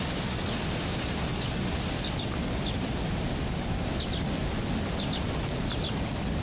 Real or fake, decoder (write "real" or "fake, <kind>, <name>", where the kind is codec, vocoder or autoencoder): real